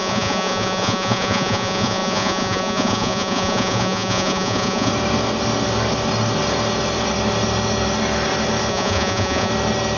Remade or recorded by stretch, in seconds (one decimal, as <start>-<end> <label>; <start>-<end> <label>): 0.0-4.9 remade; 4.9-8.7 recorded; 8.7-9.5 remade; 9.5-10.0 recorded